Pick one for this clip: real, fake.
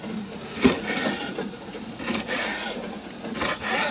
fake